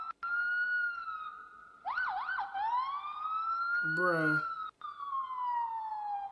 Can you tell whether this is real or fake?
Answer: real